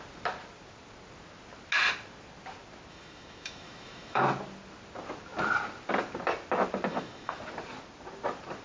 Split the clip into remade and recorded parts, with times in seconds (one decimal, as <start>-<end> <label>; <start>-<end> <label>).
0.0-2.9 recorded; 2.9-4.2 remade; 4.2-6.9 recorded; 6.9-7.4 remade; 7.4-8.6 recorded